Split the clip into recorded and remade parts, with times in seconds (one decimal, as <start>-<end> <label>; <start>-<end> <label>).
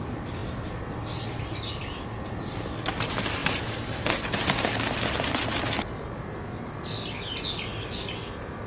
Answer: 0.0-8.7 recorded